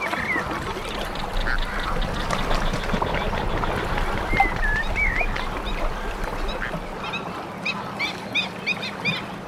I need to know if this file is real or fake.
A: real